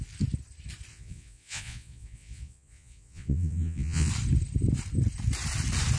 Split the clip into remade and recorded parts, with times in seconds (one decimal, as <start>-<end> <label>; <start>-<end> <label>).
0.0-0.9 recorded; 0.9-4.1 remade; 4.1-6.0 recorded